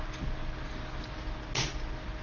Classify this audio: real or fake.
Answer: real